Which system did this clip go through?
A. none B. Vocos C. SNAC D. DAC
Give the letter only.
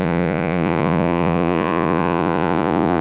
B